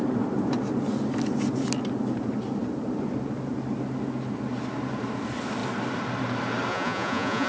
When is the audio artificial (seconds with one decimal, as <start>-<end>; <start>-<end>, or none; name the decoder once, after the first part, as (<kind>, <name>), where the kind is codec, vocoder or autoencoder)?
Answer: 6.7-7.5 (vocoder, Vocos)